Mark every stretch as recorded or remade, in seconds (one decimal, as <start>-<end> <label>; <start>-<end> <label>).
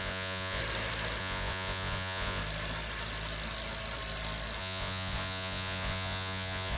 0.0-0.6 remade; 0.6-1.2 recorded; 1.2-2.4 remade; 2.4-4.6 recorded; 4.6-6.8 remade